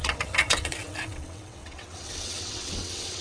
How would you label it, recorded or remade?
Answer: remade